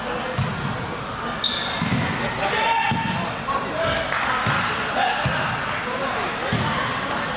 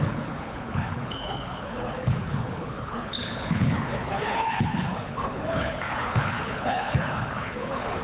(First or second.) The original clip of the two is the first